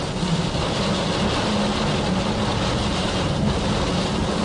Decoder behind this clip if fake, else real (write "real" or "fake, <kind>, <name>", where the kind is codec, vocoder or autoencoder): real